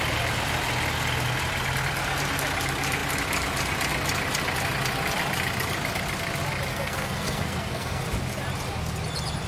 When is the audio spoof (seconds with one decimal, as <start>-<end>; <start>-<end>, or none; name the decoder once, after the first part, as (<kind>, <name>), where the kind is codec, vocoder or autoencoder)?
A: 6.7-8.0 (codec, SNAC)